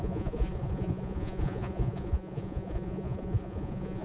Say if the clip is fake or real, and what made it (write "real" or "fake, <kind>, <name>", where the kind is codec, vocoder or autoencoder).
fake, vocoder, Vocos